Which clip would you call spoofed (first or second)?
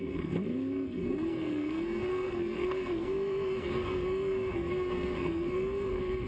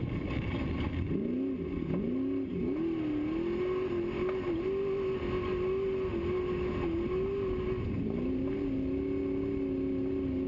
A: first